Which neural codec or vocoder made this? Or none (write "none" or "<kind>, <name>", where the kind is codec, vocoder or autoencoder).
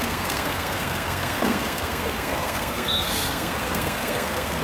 codec, SNAC